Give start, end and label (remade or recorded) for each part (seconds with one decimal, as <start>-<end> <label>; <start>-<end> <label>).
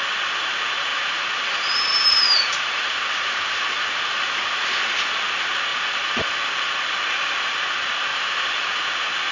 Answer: 0.0-0.9 recorded; 0.9-4.8 remade; 4.8-5.7 recorded; 5.7-6.5 remade; 6.5-8.1 recorded; 8.1-8.8 remade; 8.8-9.3 recorded